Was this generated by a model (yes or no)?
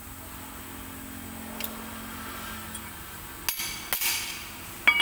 no